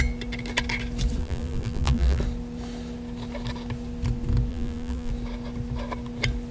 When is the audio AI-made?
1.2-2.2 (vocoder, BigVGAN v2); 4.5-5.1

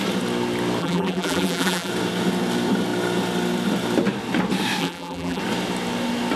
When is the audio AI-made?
0.8-1.9 (vocoder, BigVGAN v2); 4.8-5.4

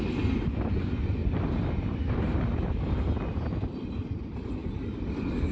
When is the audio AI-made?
1.2-2.9 (vocoder, BigVGAN v2)

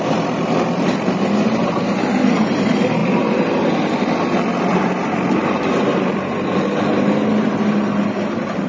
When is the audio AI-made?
none